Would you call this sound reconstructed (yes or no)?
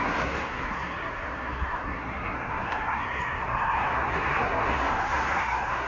yes